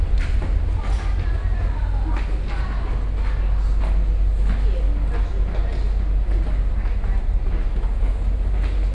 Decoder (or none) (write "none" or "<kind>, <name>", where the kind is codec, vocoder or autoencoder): none